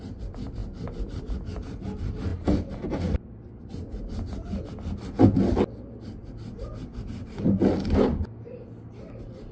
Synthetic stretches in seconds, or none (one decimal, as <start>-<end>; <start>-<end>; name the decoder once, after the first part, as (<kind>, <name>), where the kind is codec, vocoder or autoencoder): none

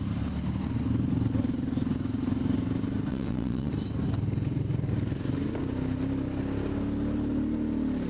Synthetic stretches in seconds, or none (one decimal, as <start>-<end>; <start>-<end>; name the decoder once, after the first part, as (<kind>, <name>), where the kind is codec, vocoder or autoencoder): 3.1-3.7 (vocoder, WaveNeXt)